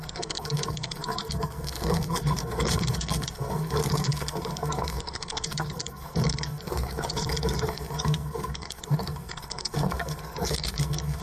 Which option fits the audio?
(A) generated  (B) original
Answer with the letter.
A